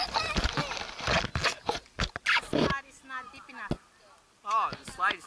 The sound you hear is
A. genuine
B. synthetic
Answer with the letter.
A